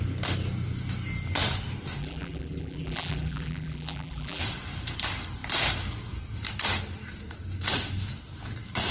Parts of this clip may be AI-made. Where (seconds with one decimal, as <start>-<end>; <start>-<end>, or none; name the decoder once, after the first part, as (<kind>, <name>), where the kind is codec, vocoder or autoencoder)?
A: 2.0-4.4 (vocoder, BigVGAN v2)